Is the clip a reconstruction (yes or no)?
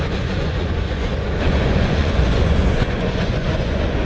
yes